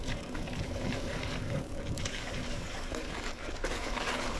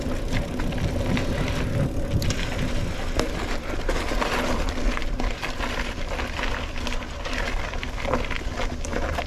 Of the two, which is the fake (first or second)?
first